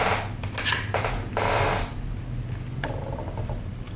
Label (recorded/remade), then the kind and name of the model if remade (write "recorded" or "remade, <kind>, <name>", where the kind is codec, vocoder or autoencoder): recorded